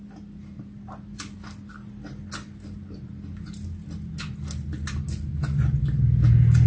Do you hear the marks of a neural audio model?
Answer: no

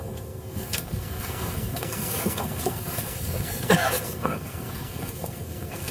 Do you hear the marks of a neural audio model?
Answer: yes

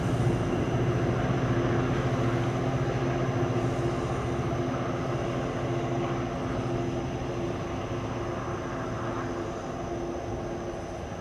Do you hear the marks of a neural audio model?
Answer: no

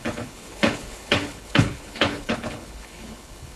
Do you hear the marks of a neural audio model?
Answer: yes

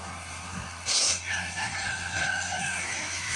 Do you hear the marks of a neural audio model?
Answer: yes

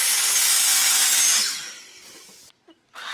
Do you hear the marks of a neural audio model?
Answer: no